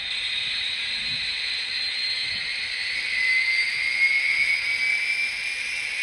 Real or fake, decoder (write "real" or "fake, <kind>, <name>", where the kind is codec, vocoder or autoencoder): real